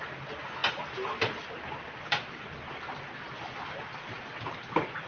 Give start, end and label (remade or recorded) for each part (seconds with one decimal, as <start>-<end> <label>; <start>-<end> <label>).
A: 0.0-5.1 recorded